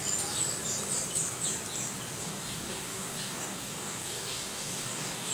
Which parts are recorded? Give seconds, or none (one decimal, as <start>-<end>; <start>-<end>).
0.0-2.2